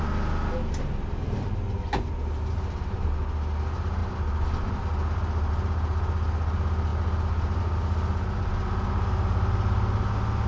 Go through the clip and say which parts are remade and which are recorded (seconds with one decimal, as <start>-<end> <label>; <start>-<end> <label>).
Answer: 0.0-10.5 recorded